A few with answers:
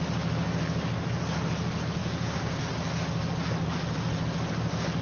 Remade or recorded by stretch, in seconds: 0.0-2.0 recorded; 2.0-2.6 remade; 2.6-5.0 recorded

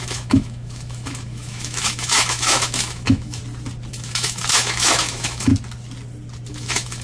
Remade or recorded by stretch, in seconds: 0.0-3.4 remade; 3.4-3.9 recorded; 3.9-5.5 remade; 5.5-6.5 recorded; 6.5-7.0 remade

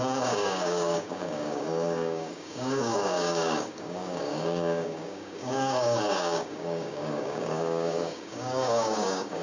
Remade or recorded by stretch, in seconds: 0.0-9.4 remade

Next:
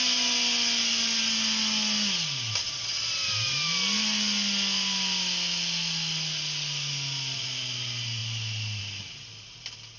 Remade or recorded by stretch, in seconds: 0.0-10.0 recorded

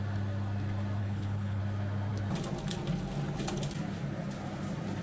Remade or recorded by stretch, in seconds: 0.0-1.0 recorded; 1.0-1.6 remade; 1.6-5.0 recorded